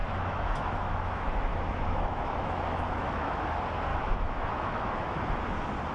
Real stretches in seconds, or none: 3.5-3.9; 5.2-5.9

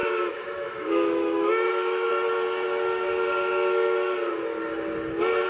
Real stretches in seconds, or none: 2.1-5.5